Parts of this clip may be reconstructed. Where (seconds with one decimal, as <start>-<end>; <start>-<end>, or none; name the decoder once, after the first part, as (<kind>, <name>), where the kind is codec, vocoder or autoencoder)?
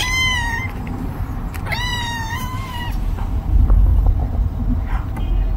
1.9-3.0 (vocoder, BigVGAN v2); 3.9-4.9